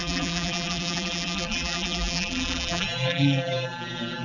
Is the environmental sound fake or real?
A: fake